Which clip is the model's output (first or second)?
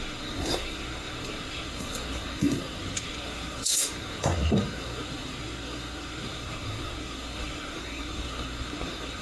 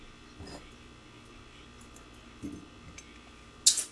first